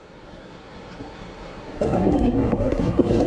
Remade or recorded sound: remade